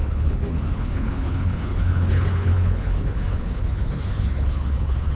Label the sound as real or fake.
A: fake